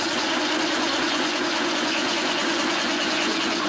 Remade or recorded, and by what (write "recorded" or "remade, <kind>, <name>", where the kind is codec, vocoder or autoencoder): remade, vocoder, Vocos